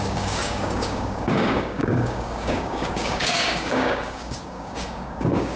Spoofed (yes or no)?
yes